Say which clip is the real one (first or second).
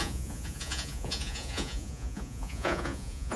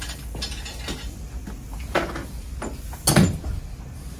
second